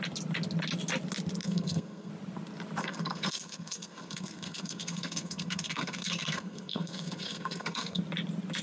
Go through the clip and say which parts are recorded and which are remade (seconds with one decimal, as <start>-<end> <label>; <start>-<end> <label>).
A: 0.0-1.4 recorded; 1.4-2.1 remade; 2.1-2.8 recorded; 2.8-8.0 remade; 8.0-8.6 recorded